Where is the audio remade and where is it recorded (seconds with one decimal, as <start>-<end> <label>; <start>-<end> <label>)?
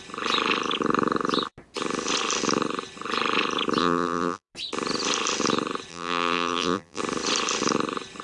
0.0-3.8 recorded; 3.8-4.5 remade; 4.5-5.9 recorded; 5.9-7.0 remade; 7.0-8.2 recorded